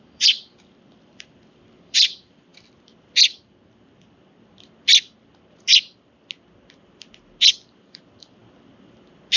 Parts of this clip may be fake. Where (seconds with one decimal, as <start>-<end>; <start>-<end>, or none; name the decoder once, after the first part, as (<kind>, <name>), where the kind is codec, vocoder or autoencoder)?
0.0-2.5 (vocoder, BigVGAN v2); 7.5-8.4